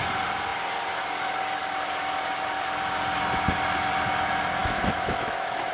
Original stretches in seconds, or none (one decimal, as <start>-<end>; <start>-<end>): 0.0-4.6

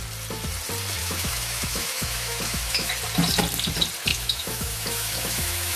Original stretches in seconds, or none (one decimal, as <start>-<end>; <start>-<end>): 0.0-1.0; 2.9-4.1